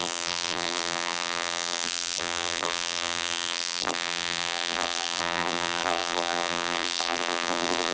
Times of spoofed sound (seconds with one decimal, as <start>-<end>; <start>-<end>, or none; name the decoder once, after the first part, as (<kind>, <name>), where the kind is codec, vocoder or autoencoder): 0.0-7.9 (vocoder, BigVGAN v2)